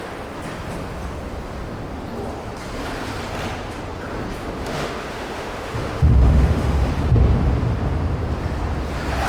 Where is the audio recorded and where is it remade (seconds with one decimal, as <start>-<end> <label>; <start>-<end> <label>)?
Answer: 0.0-4.4 recorded; 4.4-6.9 remade; 6.9-9.3 recorded